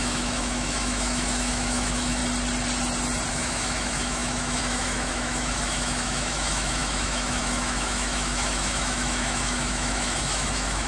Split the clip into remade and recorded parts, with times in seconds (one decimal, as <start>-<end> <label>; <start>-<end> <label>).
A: 0.0-2.2 remade; 2.2-3.3 recorded; 3.3-10.9 remade